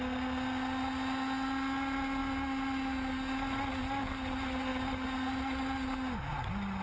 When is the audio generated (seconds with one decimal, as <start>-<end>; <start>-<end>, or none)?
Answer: none